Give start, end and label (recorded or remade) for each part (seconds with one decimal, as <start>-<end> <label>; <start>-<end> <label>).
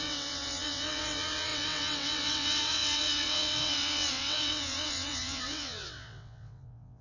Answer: 0.0-7.0 remade